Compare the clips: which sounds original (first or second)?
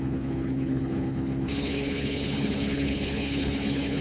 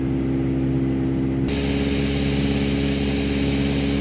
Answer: second